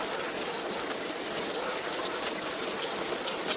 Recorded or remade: recorded